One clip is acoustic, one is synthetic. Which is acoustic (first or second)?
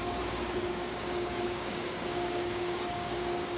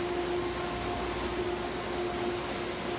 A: second